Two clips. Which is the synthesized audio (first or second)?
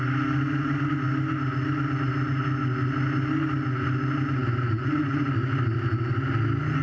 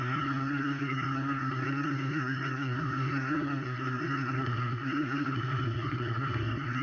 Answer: second